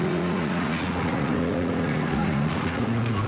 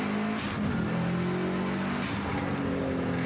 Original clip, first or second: second